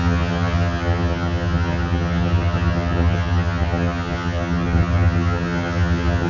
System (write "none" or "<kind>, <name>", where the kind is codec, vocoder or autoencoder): vocoder, HiFi-GAN